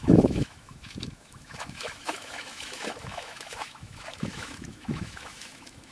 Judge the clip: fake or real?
fake